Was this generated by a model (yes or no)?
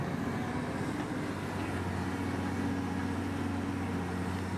no